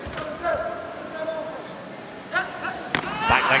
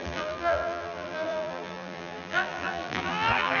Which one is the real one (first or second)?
first